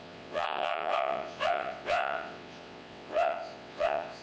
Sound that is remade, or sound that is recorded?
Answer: remade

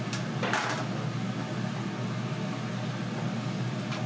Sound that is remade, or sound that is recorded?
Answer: recorded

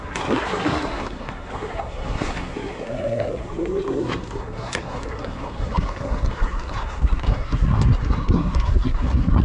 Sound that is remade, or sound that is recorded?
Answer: remade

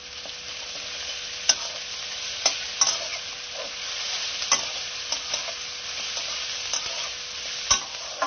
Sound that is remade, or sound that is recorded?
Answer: recorded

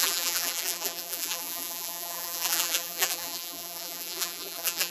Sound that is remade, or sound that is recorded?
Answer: remade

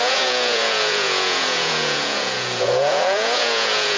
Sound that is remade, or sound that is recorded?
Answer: remade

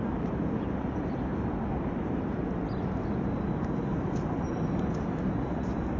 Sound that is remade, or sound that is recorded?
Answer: recorded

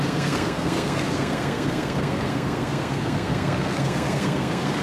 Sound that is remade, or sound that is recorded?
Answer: remade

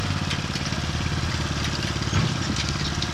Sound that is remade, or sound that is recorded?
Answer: recorded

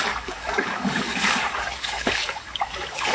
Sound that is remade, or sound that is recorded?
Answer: remade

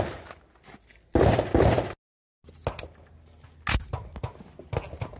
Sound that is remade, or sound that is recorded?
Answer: recorded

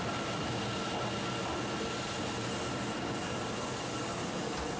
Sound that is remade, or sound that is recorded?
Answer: recorded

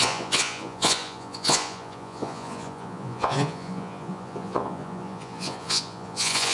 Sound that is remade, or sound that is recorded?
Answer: remade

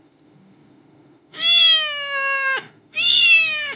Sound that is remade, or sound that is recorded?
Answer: remade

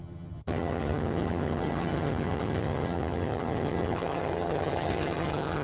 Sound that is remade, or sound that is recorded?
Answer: remade